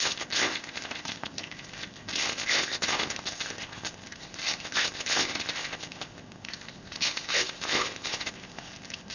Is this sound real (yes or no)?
no